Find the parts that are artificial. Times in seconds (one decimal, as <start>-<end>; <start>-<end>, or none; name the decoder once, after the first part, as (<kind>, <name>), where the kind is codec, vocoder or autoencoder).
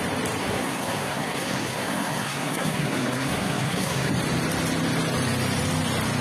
0.4-4.1 (codec, SNAC)